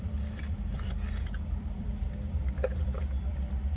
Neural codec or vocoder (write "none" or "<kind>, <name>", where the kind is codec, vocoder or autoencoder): vocoder, BigVGAN v2